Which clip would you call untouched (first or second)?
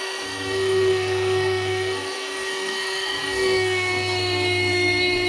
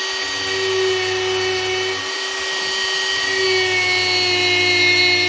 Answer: second